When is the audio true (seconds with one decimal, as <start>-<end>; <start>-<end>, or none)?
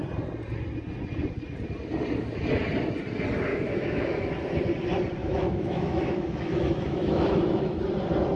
0.0-3.5; 4.3-5.2; 7.8-8.4